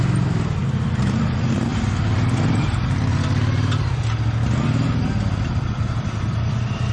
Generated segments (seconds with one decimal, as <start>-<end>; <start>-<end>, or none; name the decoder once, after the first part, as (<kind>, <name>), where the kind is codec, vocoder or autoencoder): none